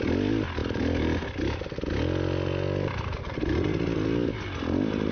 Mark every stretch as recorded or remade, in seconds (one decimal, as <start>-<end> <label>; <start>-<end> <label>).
0.0-5.1 recorded